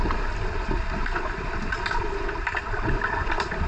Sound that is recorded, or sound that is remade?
remade